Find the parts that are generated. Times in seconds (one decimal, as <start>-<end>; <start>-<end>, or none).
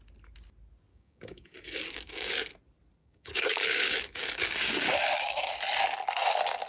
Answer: 0.9-2.3; 3.0-5.5